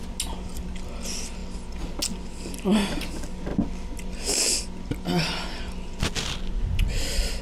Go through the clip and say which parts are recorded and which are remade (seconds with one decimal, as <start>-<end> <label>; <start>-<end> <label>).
0.0-7.4 recorded